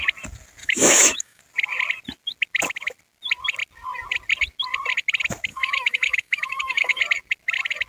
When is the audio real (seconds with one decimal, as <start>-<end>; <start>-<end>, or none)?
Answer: 0.0-0.6; 1.4-5.5; 7.0-7.9